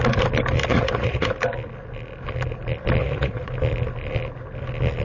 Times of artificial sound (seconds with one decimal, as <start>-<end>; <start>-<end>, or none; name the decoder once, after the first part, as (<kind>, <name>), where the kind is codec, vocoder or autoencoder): 0.7-1.3 (vocoder, Vocos); 3.0-3.5